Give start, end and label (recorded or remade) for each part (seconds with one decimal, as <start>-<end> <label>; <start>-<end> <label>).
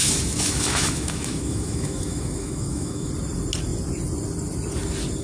0.0-3.1 remade; 3.1-5.2 recorded